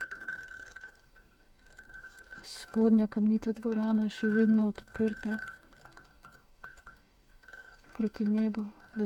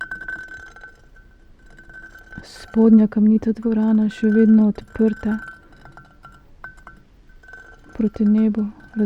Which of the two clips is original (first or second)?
second